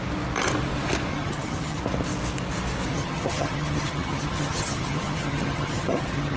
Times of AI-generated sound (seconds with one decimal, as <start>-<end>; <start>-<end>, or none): 1.1-1.8; 2.9-6.4